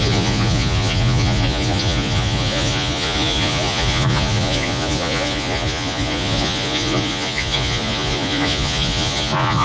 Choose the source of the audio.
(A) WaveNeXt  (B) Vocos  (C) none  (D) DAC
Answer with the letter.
B